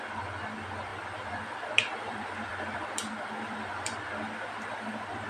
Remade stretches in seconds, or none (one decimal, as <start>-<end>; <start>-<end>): 0.9-4.1